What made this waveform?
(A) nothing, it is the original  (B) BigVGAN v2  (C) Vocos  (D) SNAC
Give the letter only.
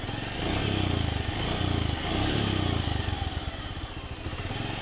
A